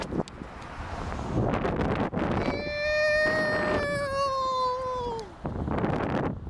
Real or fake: real